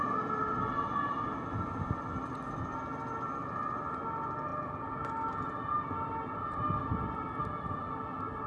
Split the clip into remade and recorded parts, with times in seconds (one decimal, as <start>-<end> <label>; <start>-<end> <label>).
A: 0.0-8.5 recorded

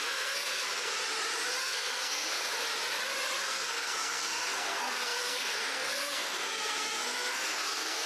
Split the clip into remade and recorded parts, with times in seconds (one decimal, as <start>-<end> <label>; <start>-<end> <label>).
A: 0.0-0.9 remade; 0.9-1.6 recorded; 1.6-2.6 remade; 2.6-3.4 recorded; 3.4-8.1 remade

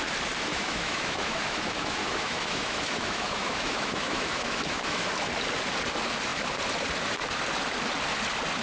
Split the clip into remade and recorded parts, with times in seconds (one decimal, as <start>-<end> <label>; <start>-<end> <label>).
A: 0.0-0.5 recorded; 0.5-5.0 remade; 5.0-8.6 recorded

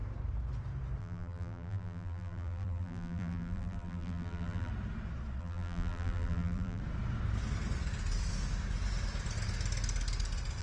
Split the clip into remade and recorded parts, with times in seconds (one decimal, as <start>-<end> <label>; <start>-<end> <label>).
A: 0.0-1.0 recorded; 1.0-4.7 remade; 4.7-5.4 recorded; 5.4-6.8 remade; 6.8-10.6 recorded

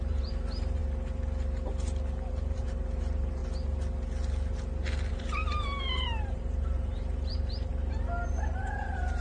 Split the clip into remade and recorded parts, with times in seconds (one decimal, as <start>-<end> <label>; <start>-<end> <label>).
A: 0.0-0.8 remade; 0.8-2.3 recorded; 2.3-3.4 remade; 3.4-5.1 recorded; 5.1-7.7 remade; 7.7-8.3 recorded; 8.3-9.2 remade

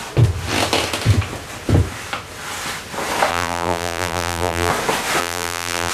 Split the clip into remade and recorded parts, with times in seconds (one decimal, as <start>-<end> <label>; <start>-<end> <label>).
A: 0.0-3.3 recorded; 3.3-4.7 remade; 4.7-5.2 recorded; 5.2-5.9 remade

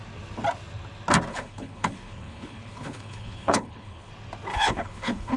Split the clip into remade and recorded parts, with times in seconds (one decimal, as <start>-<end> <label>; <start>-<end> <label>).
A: 0.0-1.3 recorded; 1.3-4.1 remade; 4.1-4.5 recorded; 4.5-5.4 remade

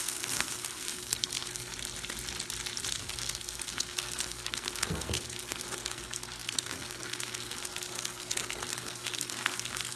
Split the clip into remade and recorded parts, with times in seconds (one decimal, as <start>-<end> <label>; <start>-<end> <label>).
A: 0.0-1.7 remade; 1.7-2.9 recorded; 2.9-10.0 remade